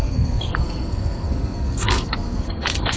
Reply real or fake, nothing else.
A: fake